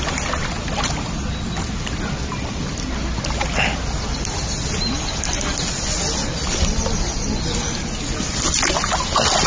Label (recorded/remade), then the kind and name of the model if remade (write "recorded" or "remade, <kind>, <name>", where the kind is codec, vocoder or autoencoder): recorded